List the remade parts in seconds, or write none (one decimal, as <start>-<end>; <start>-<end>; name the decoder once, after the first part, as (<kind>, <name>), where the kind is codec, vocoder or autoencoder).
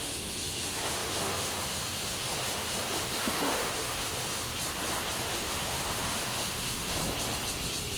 0.0-4.5 (autoencoder, DAC-VAE); 5.2-7.0